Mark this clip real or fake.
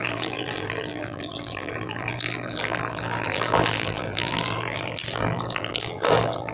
fake